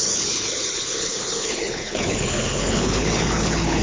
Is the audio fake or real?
fake